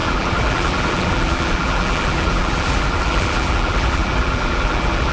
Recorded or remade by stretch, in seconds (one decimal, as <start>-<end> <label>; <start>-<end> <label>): 0.0-5.1 remade